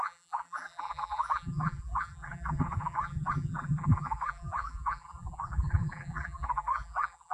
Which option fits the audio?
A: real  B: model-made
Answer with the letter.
B